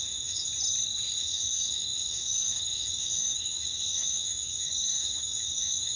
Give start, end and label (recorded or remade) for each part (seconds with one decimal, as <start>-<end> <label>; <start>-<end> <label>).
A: 0.0-0.5 remade; 0.5-1.2 recorded; 1.2-6.0 remade